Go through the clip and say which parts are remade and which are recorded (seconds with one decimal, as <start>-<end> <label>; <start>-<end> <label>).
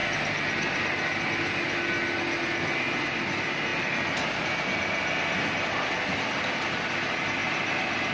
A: 0.0-8.1 recorded